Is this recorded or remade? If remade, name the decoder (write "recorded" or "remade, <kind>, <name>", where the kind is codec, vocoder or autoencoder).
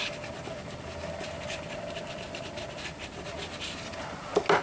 recorded